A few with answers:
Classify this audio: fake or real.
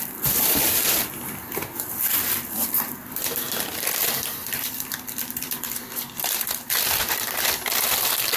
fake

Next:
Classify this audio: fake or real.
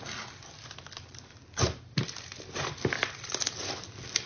real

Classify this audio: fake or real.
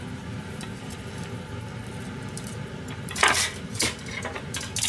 fake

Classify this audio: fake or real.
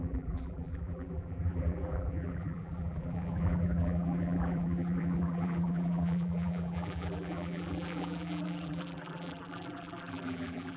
fake